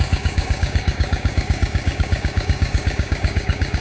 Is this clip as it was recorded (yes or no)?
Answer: no